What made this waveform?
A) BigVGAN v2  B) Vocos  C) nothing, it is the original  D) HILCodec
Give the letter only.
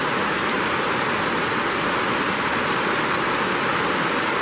C